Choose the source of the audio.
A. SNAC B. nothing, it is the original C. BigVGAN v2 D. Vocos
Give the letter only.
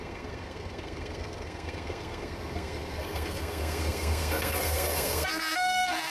A